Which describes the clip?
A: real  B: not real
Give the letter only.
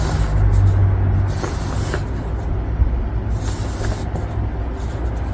A